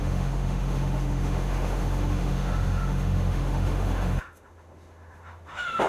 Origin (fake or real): fake